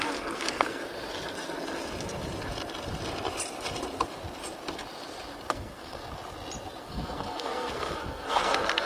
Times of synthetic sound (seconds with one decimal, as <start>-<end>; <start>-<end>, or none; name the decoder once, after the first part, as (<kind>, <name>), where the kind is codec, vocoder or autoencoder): 0.0-0.8 (codec, SNAC); 5.5-6.0; 6.8-8.9